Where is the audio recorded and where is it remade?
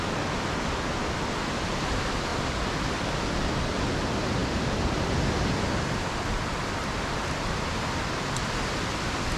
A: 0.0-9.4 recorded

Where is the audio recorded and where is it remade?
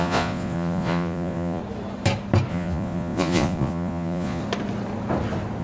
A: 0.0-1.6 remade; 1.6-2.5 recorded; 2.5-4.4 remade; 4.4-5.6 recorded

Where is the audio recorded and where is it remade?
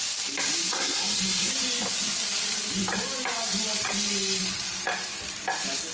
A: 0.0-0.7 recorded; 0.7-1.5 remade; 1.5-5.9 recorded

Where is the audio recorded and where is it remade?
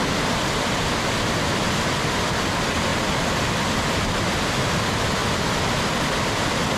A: 0.0-2.9 remade; 2.9-3.6 recorded; 3.6-5.2 remade; 5.2-5.9 recorded; 5.9-6.8 remade